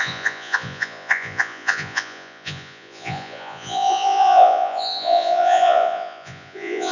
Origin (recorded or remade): remade